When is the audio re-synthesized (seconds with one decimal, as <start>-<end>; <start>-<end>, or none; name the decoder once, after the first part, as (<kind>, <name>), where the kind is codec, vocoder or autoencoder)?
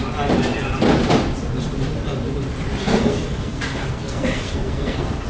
2.8-5.3 (codec, SNAC)